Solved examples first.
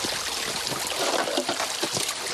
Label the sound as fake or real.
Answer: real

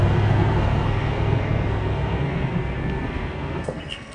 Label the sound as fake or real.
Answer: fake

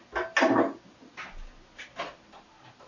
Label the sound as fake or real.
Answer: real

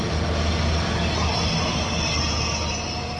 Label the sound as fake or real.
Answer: real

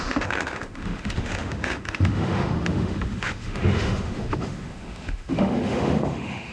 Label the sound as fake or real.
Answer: fake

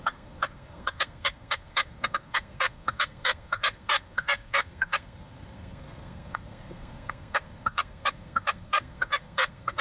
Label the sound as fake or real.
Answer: fake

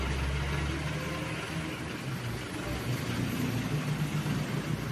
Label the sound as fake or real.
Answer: real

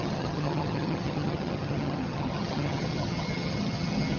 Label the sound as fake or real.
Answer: fake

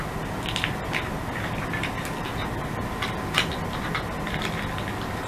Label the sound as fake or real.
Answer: real